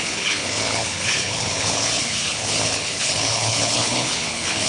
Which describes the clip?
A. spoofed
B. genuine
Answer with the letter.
A